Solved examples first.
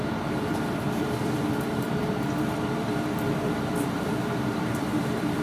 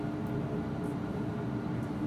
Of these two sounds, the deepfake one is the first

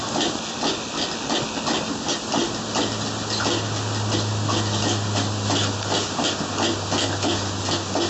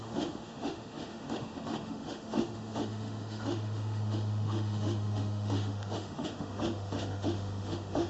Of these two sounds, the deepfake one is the second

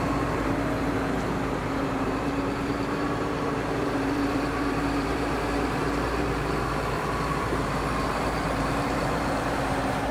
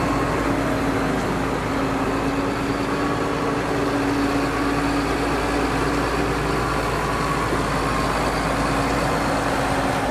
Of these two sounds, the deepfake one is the first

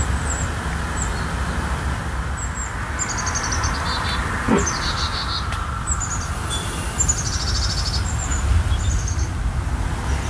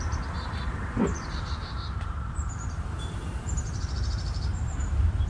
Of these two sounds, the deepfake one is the second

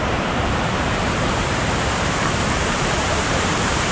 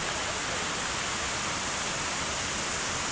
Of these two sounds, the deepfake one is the first